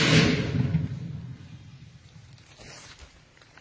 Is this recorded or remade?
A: recorded